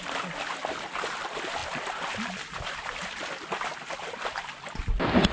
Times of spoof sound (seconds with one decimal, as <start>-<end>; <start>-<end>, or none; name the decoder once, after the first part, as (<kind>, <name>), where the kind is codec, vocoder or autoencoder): none